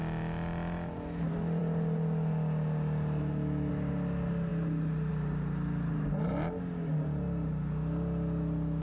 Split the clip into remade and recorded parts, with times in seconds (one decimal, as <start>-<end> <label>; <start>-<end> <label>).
0.0-8.8 recorded